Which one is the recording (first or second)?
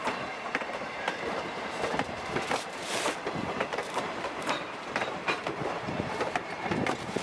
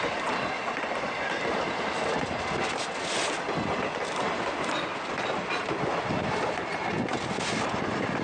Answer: second